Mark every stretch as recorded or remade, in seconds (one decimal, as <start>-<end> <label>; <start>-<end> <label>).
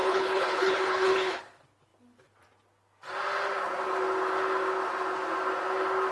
0.0-1.4 remade; 1.4-6.1 recorded